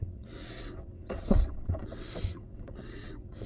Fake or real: fake